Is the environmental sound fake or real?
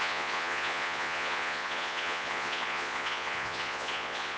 fake